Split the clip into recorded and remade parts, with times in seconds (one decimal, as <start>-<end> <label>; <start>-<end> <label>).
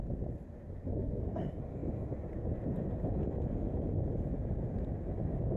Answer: 0.0-0.8 recorded; 0.8-1.4 remade; 1.4-5.6 recorded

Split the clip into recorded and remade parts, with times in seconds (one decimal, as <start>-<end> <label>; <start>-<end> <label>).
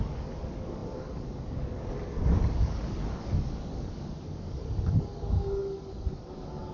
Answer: 0.0-6.7 remade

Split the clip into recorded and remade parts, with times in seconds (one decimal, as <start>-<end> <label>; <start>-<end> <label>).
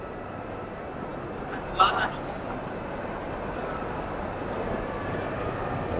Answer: 0.0-6.0 recorded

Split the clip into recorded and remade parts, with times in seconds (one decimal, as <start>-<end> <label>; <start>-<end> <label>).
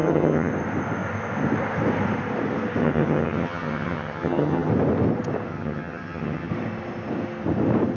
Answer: 0.0-0.5 remade; 0.5-2.8 recorded; 2.8-4.7 remade; 4.7-5.5 recorded; 5.5-6.5 remade; 6.5-8.0 recorded